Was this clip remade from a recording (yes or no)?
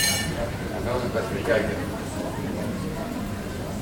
yes